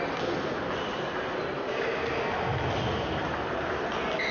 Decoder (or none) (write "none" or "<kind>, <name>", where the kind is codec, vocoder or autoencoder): none